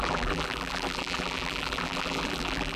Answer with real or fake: fake